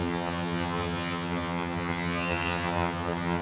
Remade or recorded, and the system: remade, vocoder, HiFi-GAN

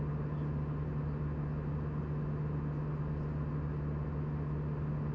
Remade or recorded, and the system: recorded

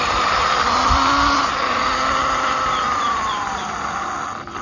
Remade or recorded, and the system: recorded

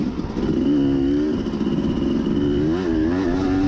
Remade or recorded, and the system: recorded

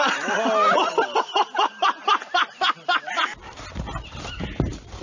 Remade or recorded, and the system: recorded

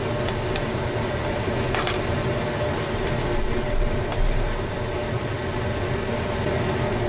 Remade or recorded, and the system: recorded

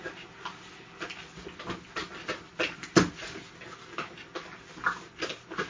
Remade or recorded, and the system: recorded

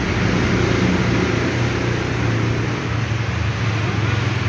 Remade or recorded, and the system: recorded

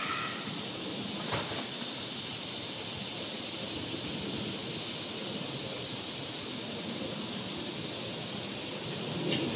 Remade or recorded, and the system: recorded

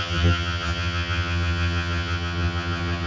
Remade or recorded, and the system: remade, vocoder, HiFi-GAN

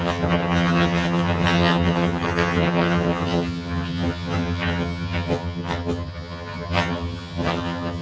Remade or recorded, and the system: remade, vocoder, HiFi-GAN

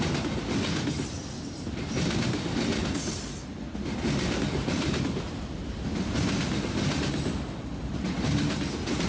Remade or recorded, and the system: recorded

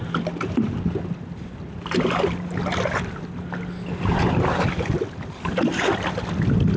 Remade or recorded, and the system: recorded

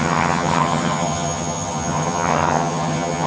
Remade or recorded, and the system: remade, vocoder, HiFi-GAN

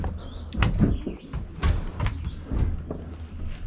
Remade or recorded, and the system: recorded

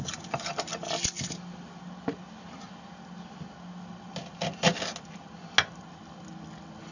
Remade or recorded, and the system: recorded